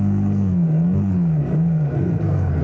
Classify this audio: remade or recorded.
remade